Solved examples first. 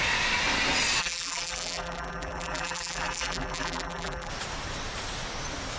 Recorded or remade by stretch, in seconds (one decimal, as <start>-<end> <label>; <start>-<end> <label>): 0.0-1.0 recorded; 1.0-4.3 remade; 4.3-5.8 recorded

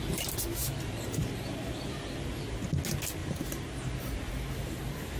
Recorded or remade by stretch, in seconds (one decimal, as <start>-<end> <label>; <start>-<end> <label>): 0.0-0.6 recorded; 0.6-1.3 remade; 1.3-3.2 recorded; 3.2-4.3 remade; 4.3-5.2 recorded

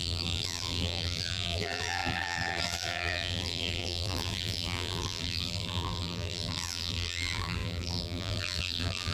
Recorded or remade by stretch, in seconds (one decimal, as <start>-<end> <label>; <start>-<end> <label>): 0.0-9.1 remade

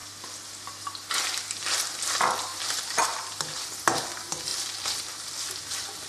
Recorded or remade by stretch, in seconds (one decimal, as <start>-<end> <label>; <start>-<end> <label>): 0.0-2.5 recorded; 2.5-3.7 remade; 3.7-6.1 recorded

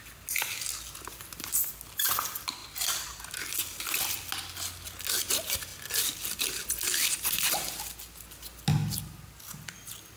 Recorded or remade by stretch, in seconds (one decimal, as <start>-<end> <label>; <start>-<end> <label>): 0.0-5.7 recorded; 5.7-6.4 remade; 6.4-10.2 recorded